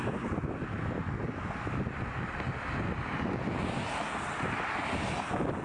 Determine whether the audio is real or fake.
real